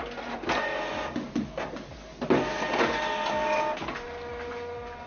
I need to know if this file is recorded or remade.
recorded